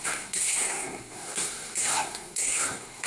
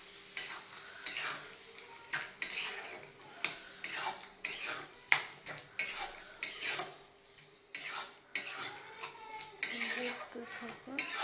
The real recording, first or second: second